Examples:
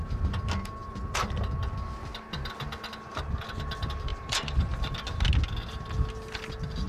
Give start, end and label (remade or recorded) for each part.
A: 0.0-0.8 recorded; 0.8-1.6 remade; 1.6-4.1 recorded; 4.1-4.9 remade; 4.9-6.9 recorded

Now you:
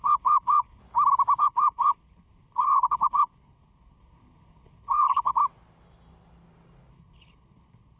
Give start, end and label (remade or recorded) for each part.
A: 0.0-0.8 remade; 0.8-1.4 recorded; 1.4-5.4 remade; 5.4-6.9 recorded; 6.9-8.0 remade